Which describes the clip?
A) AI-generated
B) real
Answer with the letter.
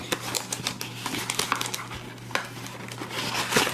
B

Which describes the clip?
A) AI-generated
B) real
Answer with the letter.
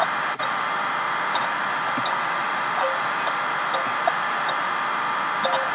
B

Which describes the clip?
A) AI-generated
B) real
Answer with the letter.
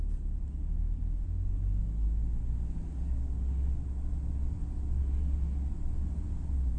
B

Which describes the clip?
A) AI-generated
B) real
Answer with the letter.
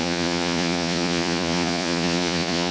A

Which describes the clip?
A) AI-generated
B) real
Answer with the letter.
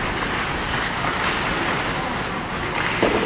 B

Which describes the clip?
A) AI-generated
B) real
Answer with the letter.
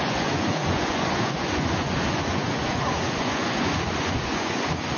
A